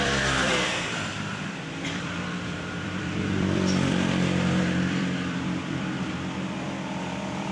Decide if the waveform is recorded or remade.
remade